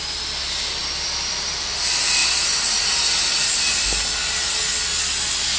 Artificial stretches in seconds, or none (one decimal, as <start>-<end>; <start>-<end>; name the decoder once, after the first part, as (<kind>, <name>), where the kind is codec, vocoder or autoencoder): 0.8-1.8 (vocoder, BigVGAN v2)

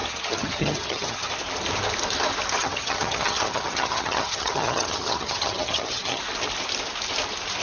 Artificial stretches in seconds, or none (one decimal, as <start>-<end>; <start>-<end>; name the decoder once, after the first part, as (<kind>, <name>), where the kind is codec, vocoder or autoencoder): 0.0-1.3 (vocoder, HiFi-GAN); 2.6-6.2

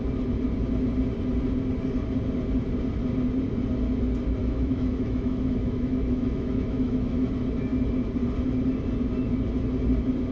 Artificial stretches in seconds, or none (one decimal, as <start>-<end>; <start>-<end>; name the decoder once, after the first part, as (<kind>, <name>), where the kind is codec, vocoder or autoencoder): 4.4-7.3 (autoencoder, DAC-VAE)

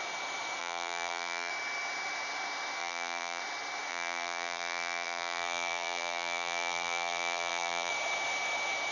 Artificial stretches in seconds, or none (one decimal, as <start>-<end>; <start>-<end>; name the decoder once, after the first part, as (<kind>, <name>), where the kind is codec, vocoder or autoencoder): 0.6-1.5 (vocoder, BigVGAN v2); 2.8-3.4; 3.9-7.9

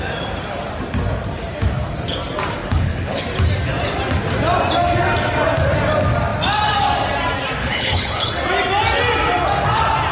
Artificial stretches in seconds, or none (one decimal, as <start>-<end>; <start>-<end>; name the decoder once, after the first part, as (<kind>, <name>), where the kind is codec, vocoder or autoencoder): 2.6-3.2 (codec, HILCodec); 7.6-8.3

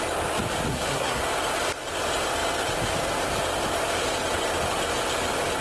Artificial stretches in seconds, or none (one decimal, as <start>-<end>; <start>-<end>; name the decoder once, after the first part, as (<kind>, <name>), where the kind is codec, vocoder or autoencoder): 0.7-1.2 (codec, SNAC)